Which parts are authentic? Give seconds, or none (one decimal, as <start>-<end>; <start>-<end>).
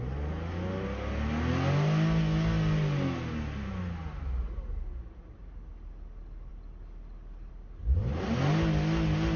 0.0-9.4